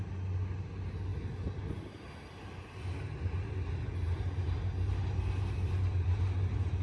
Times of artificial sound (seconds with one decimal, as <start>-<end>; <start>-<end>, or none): none